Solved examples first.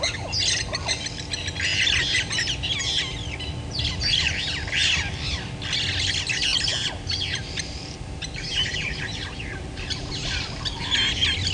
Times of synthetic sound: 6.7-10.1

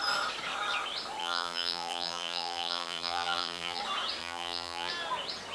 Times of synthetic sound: 1.2-3.8; 4.2-4.9